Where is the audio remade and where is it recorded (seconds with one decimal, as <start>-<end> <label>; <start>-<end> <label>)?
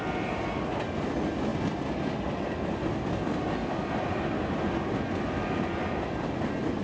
0.0-6.8 recorded